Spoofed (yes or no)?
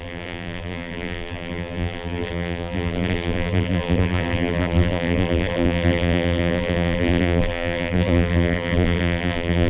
yes